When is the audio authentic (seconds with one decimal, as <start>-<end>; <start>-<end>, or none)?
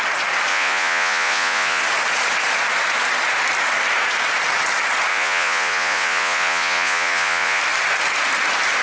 0.0-0.5; 1.8-5.1; 7.6-8.8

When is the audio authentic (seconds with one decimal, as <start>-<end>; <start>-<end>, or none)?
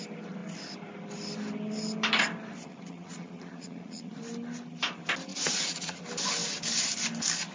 0.0-2.7; 4.2-5.3; 6.0-7.5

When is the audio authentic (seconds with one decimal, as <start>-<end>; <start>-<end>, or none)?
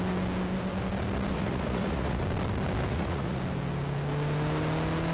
0.0-1.3; 2.2-2.9; 3.4-5.1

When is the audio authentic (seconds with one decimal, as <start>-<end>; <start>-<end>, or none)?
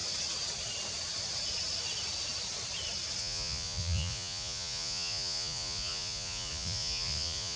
0.0-3.2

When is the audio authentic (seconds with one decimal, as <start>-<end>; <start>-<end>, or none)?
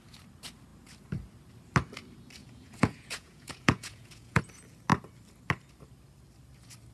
0.0-2.4; 4.4-6.9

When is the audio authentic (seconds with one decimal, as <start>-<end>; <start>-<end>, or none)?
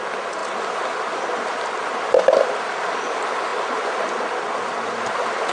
0.0-5.5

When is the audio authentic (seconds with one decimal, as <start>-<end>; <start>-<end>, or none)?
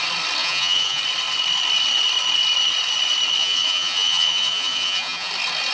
0.0-0.4; 1.0-3.4; 5.3-5.7